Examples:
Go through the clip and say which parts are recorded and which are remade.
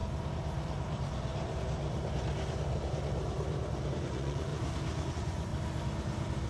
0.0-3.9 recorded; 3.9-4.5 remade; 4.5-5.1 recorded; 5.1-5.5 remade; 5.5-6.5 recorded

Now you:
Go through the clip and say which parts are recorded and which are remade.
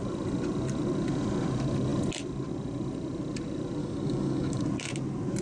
0.0-3.8 recorded; 3.8-4.6 remade; 4.6-5.4 recorded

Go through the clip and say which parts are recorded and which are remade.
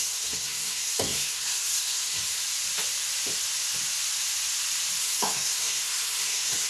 0.0-2.4 remade; 2.4-5.0 recorded; 5.0-6.7 remade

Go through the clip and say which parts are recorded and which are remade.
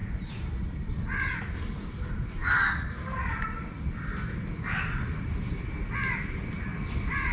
0.0-7.3 recorded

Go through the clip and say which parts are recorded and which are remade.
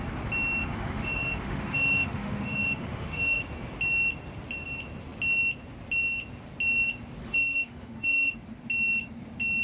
0.0-0.6 recorded; 0.6-3.4 remade; 3.4-7.2 recorded; 7.2-8.3 remade; 8.3-9.6 recorded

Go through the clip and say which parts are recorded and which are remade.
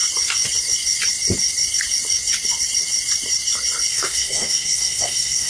0.0-3.9 recorded; 3.9-5.5 remade